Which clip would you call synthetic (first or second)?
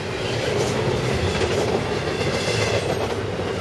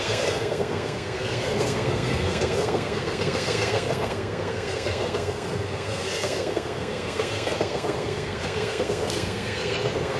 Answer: second